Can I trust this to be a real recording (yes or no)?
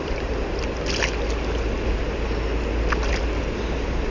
yes